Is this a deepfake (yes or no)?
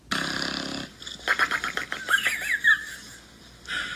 no